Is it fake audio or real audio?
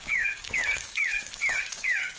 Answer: fake